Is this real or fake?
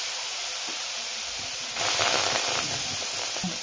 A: real